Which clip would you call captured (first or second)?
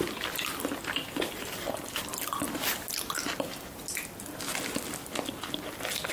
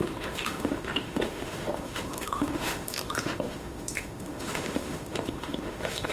first